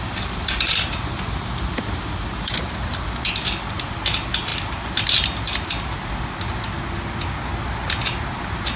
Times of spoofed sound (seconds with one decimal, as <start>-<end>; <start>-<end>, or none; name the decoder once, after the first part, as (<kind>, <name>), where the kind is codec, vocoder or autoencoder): none